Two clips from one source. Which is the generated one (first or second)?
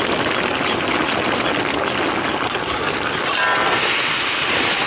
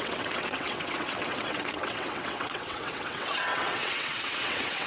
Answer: second